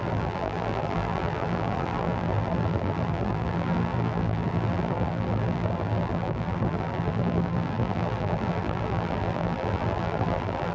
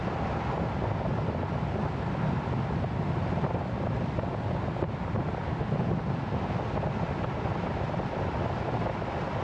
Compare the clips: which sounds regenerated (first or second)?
first